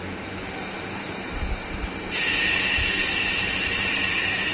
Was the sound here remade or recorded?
remade